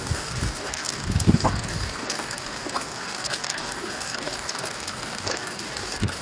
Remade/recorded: remade